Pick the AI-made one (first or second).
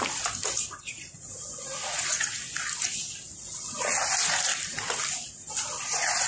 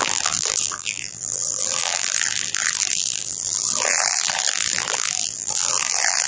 second